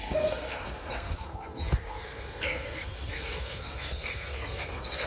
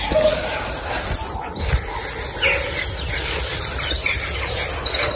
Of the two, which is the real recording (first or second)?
second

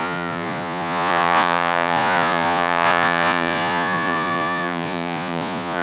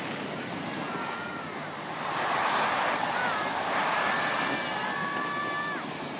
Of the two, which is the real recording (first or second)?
second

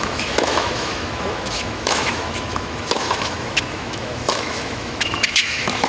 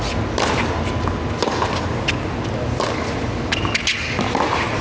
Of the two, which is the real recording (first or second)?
second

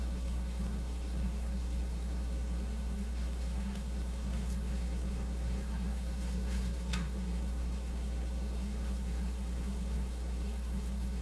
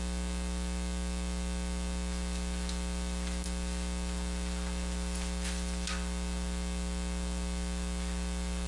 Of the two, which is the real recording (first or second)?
second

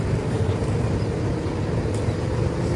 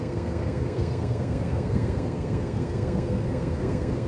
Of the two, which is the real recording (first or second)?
first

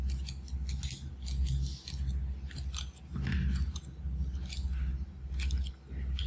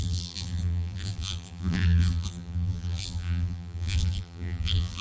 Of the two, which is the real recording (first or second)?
first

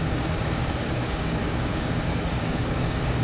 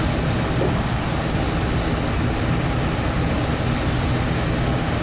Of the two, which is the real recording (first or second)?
second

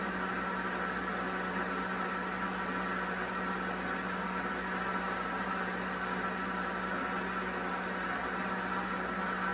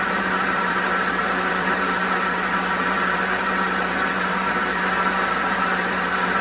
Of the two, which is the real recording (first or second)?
first